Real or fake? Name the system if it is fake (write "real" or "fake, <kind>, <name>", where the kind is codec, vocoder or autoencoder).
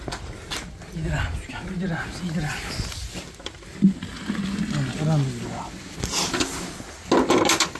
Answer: real